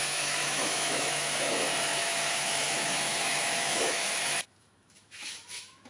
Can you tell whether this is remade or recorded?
remade